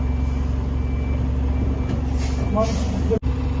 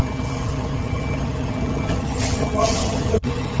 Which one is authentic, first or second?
first